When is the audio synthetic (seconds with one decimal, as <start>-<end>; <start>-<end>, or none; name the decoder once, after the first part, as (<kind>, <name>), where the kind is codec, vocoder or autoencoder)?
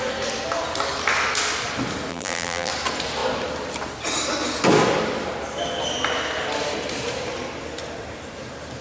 2.1-2.7 (vocoder, BigVGAN v2)